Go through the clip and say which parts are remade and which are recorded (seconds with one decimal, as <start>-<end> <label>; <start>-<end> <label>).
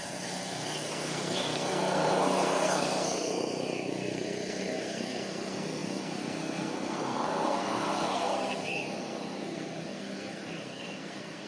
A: 0.0-11.5 remade